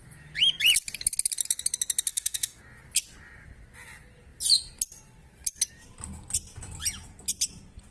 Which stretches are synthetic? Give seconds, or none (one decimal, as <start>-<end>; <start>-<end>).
2.1-2.6